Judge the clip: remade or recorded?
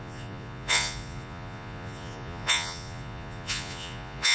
remade